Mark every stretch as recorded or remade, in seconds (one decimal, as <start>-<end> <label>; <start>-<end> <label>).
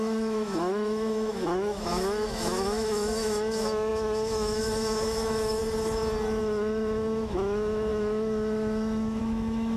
0.0-5.6 remade; 5.6-6.4 recorded; 6.4-9.8 remade